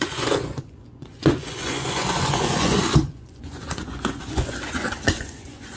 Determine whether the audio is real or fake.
fake